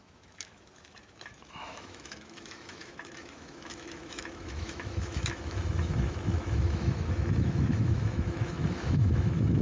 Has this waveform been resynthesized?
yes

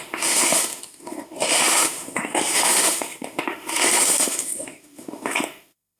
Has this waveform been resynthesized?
yes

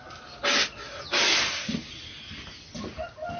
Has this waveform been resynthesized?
no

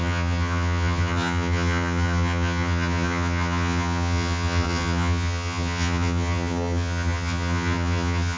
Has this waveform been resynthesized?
yes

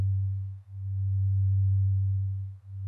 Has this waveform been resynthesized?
yes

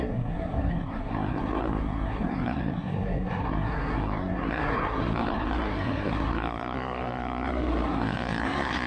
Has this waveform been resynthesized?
yes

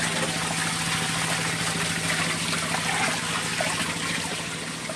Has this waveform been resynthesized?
no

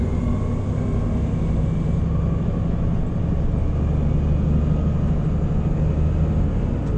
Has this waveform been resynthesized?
no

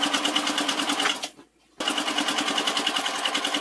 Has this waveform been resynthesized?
no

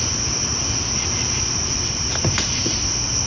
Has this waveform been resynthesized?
no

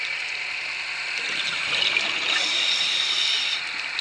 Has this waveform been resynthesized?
no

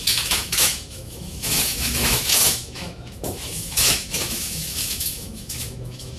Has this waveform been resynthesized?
yes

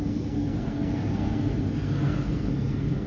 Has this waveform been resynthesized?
yes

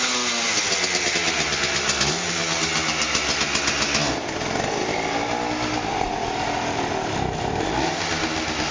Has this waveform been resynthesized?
no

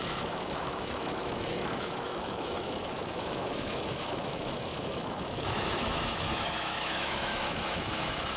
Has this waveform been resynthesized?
yes